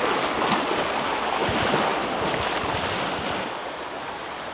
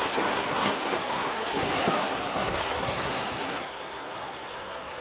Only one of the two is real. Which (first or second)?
first